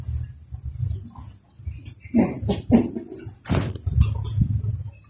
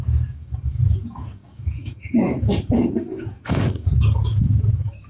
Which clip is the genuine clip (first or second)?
first